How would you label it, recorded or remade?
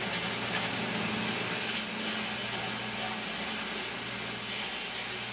recorded